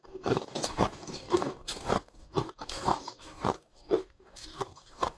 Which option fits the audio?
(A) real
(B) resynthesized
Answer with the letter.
B